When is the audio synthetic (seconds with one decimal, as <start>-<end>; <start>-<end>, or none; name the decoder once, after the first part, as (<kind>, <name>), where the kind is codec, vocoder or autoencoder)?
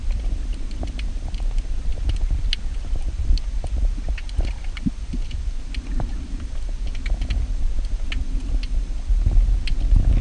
none